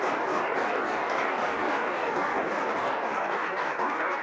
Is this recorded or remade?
remade